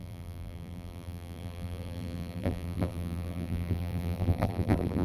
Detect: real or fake fake